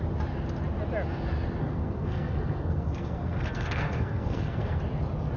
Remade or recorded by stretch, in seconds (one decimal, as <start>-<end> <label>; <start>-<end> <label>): 0.0-1.6 recorded; 1.6-4.8 remade; 4.8-5.4 recorded